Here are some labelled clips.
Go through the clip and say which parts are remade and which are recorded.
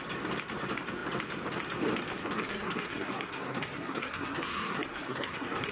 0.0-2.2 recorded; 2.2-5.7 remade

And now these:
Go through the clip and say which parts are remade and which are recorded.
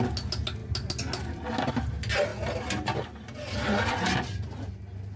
0.0-5.2 recorded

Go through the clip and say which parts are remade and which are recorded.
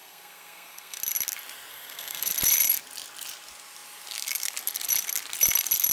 0.0-1.0 remade; 1.0-1.7 recorded; 1.7-2.3 remade; 2.3-5.9 recorded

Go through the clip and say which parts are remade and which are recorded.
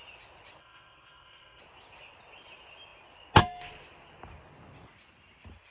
0.0-0.6 recorded; 0.6-1.6 remade; 1.6-5.7 recorded